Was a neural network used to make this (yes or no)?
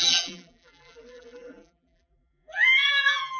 yes